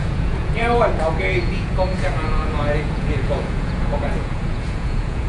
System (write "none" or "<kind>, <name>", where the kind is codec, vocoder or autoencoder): vocoder, Vocos